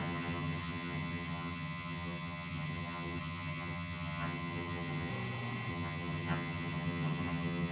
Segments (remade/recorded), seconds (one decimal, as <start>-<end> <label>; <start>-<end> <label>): 0.0-5.1 remade; 5.1-5.7 recorded; 5.7-7.7 remade